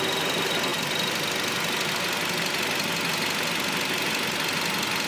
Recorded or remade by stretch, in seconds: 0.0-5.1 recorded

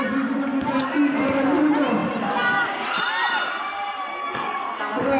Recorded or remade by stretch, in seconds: 0.0-4.1 recorded; 4.1-4.8 remade; 4.8-5.2 recorded